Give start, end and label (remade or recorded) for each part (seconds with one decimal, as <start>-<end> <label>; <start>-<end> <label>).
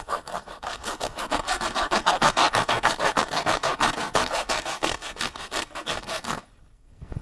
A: 0.0-7.2 remade